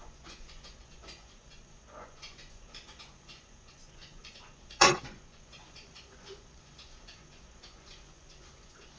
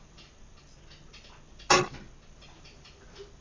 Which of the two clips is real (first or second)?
second